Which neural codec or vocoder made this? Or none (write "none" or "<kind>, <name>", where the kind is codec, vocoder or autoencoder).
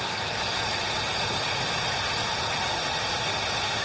none